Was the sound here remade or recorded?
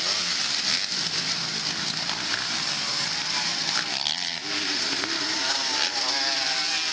recorded